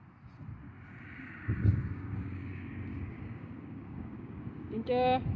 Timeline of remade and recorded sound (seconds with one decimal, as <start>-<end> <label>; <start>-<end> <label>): 0.0-1.7 recorded; 1.7-4.9 remade; 4.9-5.4 recorded